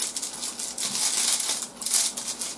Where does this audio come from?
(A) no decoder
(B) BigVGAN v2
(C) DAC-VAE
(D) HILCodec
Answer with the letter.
A